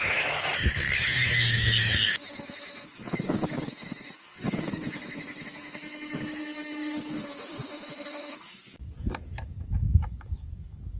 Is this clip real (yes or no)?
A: no